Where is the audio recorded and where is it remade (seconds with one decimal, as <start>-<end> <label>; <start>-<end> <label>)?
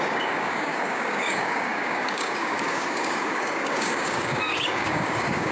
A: 0.0-5.5 remade